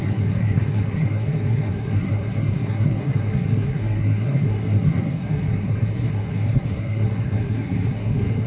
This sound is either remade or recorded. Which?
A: remade